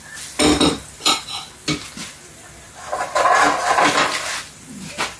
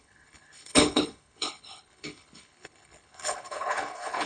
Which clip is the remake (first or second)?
second